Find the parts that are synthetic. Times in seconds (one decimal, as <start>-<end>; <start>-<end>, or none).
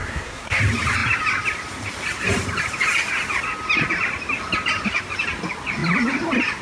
0.0-0.6